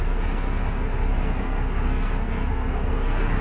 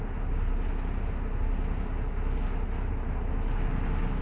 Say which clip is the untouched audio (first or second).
second